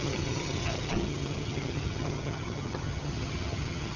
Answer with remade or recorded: remade